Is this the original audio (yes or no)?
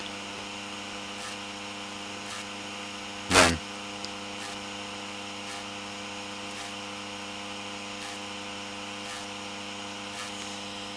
yes